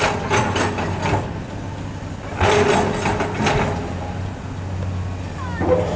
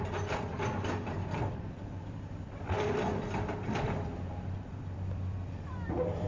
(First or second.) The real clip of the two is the first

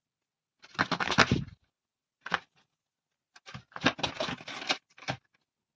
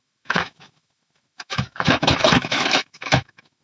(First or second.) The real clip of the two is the first